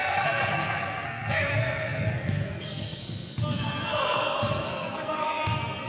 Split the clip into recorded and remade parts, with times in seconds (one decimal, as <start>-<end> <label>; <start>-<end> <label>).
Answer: 0.0-5.9 remade